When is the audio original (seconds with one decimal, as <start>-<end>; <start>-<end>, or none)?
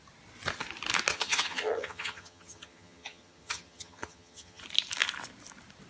0.0-1.1; 4.6-5.9